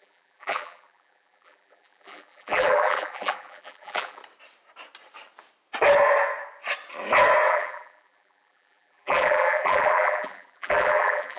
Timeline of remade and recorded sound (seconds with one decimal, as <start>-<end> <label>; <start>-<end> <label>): 0.0-4.2 remade; 4.2-7.5 recorded; 7.5-11.4 remade